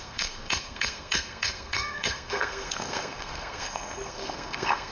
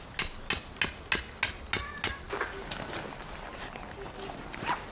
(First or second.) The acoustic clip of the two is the second